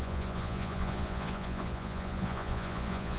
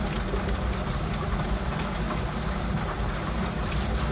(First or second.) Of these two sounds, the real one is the second